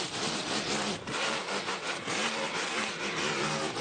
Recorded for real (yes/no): no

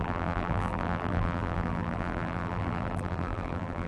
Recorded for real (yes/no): no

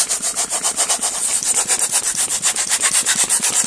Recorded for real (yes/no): yes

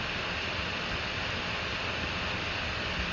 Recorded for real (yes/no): yes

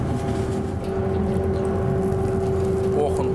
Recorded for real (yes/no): yes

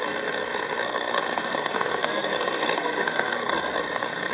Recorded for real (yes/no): no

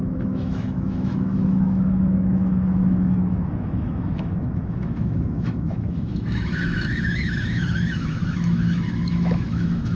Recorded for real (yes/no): no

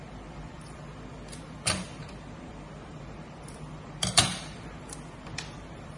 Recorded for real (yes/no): no